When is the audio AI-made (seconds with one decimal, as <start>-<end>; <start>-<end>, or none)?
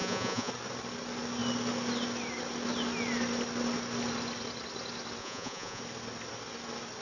0.0-0.5; 5.2-5.8